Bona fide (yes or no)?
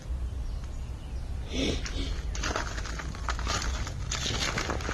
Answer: yes